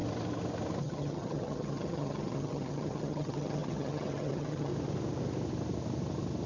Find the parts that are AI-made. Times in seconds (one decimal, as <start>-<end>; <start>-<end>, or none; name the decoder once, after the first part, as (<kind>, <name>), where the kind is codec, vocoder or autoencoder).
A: 0.8-4.7 (vocoder, HiFi-GAN)